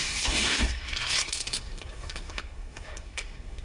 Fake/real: fake